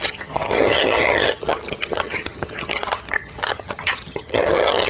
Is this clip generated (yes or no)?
yes